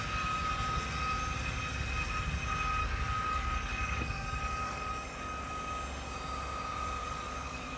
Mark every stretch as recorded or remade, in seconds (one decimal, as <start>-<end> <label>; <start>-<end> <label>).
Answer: 0.0-2.8 recorded; 2.8-5.5 remade; 5.5-7.0 recorded; 7.0-7.8 remade